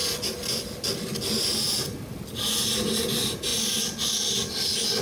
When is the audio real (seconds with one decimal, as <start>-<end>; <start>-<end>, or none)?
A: 0.0-5.0